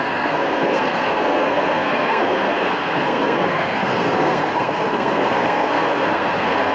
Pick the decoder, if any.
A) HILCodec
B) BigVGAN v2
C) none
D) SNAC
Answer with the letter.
D